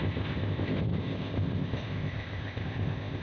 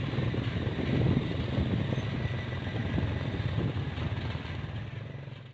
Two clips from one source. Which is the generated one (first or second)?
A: first